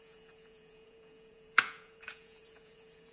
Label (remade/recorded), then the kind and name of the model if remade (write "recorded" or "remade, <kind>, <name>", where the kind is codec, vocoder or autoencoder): remade, vocoder, Vocos